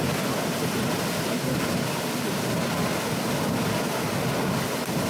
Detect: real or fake real